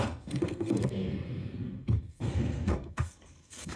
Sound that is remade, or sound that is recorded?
remade